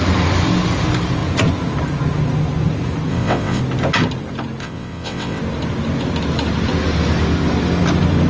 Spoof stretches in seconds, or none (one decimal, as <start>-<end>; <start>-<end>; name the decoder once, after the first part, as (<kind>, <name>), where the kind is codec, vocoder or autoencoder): 3.1-3.6 (vocoder, WaveNeXt); 4.6-5.4